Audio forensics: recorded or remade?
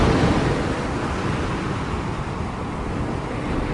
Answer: recorded